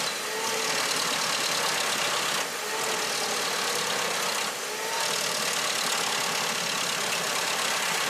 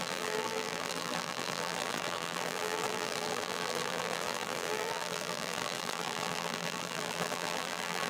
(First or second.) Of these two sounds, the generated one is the second